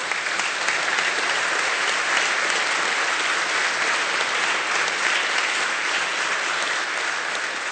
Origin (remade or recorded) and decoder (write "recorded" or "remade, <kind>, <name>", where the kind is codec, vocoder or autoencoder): recorded